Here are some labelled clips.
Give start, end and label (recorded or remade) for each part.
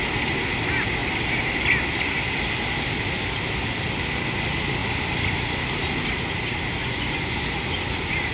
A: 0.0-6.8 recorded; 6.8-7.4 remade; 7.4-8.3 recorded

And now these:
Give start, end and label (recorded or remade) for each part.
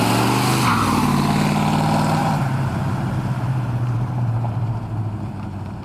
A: 0.0-2.2 recorded; 2.2-4.6 remade; 4.6-5.8 recorded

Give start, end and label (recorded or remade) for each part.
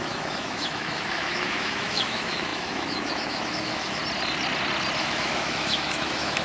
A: 0.0-4.0 remade; 4.0-5.0 recorded; 5.0-6.4 remade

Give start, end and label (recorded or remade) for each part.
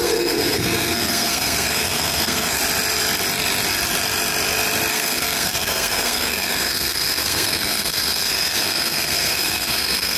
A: 0.0-2.6 remade; 2.6-4.9 recorded; 4.9-10.2 remade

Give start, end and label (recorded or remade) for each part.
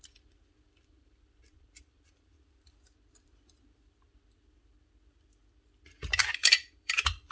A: 0.0-5.4 remade; 5.4-6.2 recorded; 6.2-7.3 remade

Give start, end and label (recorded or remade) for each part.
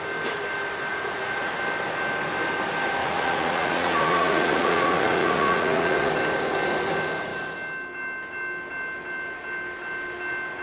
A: 0.0-0.9 recorded; 0.9-1.5 remade; 1.5-3.0 recorded; 3.0-6.1 remade; 6.1-10.6 recorded